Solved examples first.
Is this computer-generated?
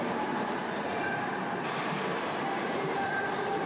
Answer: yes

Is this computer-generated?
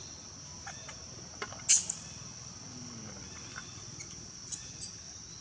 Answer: no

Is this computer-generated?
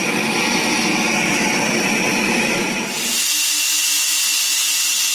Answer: no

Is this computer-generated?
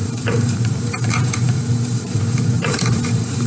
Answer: yes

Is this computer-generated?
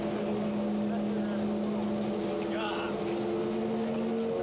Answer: no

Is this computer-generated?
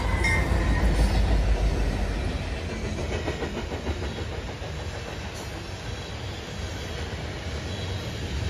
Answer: no